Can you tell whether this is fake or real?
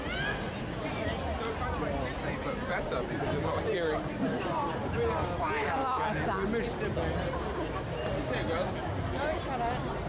real